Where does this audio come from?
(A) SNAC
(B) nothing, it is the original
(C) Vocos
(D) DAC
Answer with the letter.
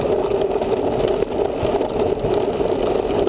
B